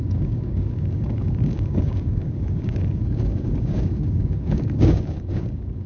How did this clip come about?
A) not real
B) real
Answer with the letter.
A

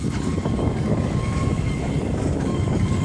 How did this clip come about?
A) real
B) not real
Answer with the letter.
B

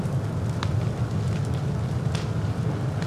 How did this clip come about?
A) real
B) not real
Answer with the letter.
A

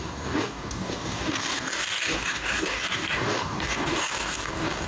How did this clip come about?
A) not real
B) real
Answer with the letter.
A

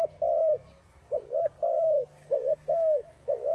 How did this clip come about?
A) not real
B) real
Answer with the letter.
A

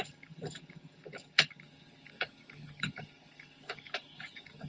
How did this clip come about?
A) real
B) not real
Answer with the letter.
B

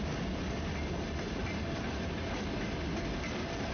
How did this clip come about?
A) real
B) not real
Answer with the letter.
A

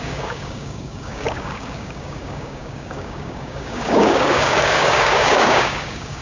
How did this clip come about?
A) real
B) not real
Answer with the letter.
B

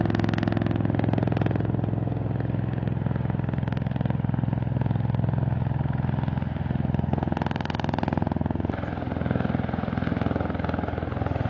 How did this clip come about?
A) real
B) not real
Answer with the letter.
A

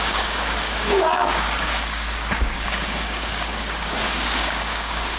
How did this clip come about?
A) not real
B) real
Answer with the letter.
A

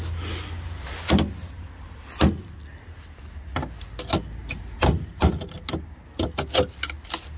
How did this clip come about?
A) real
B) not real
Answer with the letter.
A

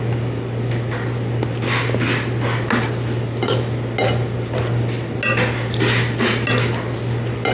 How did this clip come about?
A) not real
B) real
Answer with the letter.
B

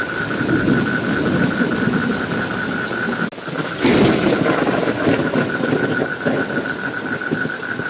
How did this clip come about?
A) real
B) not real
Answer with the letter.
A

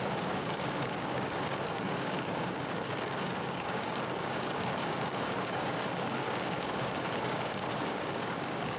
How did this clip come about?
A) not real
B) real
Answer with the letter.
A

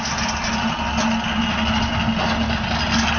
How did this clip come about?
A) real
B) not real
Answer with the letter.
A